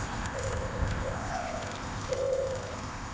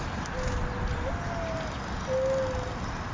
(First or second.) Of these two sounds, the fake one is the first